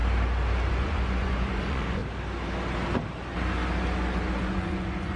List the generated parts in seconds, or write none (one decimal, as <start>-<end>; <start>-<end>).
0.7-2.0; 4.3-5.2